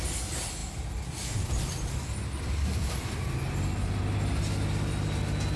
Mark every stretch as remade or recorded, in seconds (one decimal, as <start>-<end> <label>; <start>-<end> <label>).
0.0-5.6 recorded